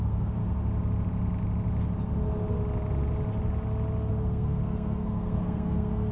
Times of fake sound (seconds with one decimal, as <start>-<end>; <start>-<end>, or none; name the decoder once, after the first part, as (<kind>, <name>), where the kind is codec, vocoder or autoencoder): 0.0-0.4 (codec, SNAC); 4.1-6.1